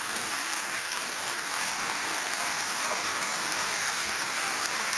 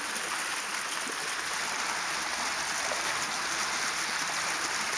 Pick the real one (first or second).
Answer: second